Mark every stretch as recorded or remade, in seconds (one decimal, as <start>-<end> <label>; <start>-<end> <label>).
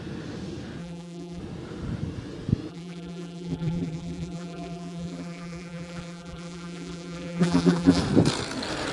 0.0-0.8 recorded; 0.8-1.4 remade; 1.4-2.7 recorded; 2.7-8.0 remade; 8.0-8.9 recorded